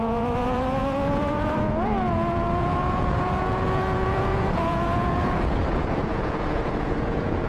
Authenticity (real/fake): fake